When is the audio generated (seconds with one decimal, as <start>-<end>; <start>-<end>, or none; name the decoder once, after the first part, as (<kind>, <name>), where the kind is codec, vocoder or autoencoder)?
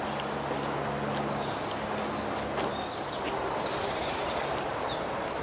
2.7-4.9 (vocoder, BigVGAN v2)